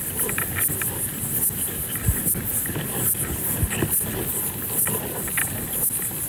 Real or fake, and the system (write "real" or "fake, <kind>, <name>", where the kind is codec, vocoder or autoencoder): real